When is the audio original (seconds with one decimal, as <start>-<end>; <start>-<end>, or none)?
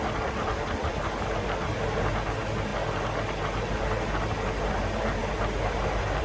0.0-6.2